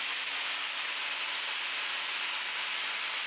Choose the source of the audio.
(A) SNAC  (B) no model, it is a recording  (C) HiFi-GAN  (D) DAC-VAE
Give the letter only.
B